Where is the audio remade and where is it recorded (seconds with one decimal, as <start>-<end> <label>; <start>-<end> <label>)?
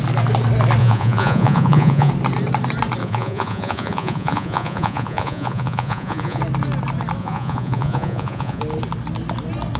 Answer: 0.0-0.8 recorded; 0.8-2.1 remade; 2.1-3.0 recorded; 3.0-6.4 remade; 6.4-7.2 recorded; 7.2-8.6 remade; 8.6-9.8 recorded